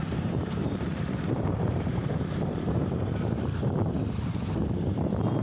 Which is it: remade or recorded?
remade